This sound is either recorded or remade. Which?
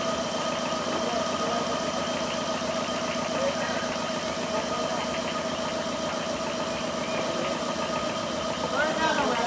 recorded